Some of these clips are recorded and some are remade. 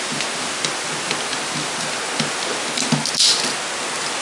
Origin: recorded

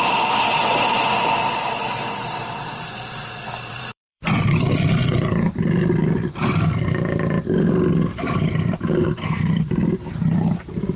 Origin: remade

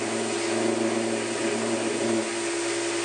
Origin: recorded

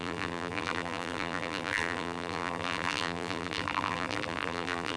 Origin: remade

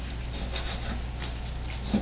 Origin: recorded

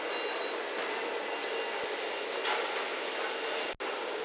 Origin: recorded